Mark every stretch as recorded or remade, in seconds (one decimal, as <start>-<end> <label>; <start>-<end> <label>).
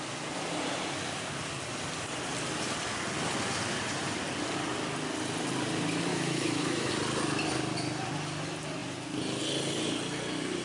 0.0-6.1 recorded; 6.1-6.9 remade; 6.9-10.6 recorded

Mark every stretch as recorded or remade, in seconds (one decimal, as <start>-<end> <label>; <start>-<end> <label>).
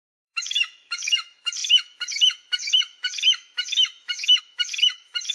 0.0-5.3 remade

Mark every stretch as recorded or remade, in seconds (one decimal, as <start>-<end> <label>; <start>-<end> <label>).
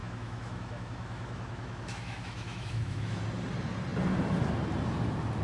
0.0-3.2 remade; 3.2-5.4 recorded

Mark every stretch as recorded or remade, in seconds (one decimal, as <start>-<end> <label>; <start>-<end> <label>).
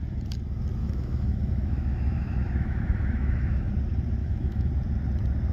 0.0-0.8 recorded; 0.8-3.7 remade; 3.7-4.2 recorded; 4.2-4.7 remade; 4.7-5.5 recorded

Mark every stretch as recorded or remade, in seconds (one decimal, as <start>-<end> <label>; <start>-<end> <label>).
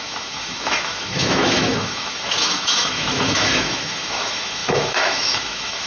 0.0-5.9 remade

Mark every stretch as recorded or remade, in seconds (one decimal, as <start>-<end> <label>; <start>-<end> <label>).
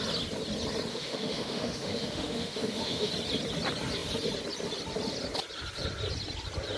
0.0-0.9 recorded; 0.9-3.1 remade; 3.1-6.8 recorded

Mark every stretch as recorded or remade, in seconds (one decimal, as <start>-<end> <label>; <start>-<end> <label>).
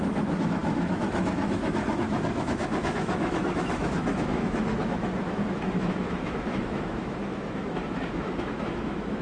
0.0-9.2 remade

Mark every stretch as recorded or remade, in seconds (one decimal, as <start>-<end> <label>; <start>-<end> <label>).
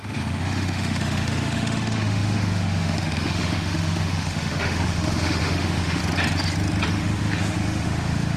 0.0-6.0 remade; 6.0-6.9 recorded; 6.9-8.4 remade